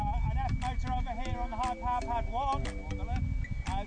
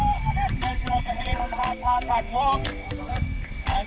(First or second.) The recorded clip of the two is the first